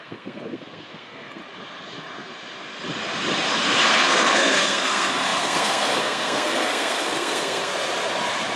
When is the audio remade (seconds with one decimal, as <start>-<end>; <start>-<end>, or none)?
0.0-1.4; 3.9-7.7